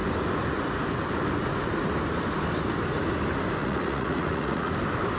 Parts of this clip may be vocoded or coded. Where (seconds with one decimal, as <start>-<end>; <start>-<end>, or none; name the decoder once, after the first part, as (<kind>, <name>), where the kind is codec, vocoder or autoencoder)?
3.6-4.7 (vocoder, Vocos)